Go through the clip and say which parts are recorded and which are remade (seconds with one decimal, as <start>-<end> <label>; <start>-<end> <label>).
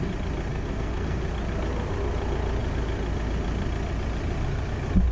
0.0-0.5 recorded; 0.5-1.3 remade; 1.3-5.1 recorded